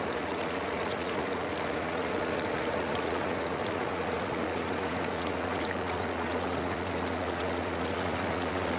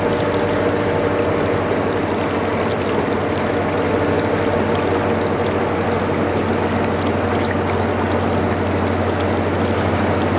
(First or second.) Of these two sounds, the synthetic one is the first